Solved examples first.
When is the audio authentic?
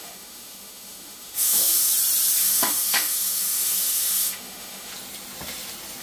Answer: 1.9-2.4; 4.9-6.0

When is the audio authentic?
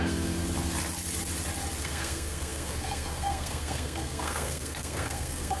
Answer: 0.4-1.8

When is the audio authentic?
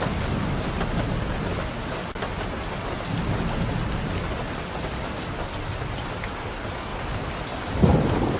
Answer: 0.0-8.4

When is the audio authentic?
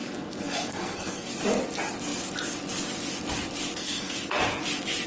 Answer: 1.3-3.8; 4.4-5.1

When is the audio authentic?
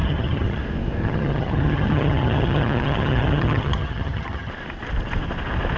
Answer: 0.6-1.0; 4.5-5.8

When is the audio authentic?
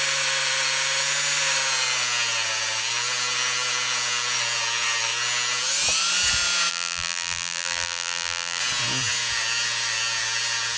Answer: 0.0-6.7; 8.6-10.8